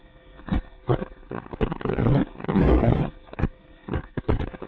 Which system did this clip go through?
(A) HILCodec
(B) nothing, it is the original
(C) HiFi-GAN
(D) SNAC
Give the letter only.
D